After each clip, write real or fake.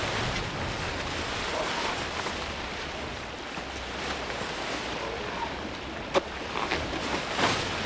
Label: real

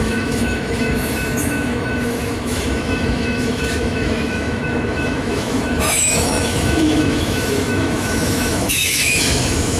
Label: fake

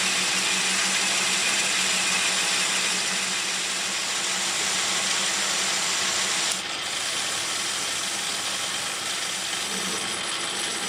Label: real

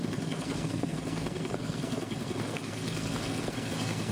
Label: fake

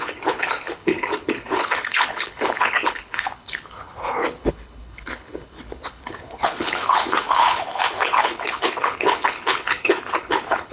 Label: fake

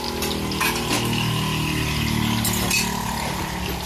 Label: real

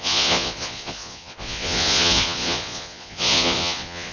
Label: fake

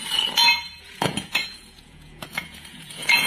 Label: fake